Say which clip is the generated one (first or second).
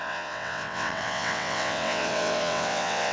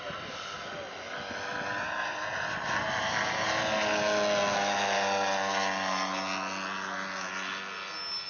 first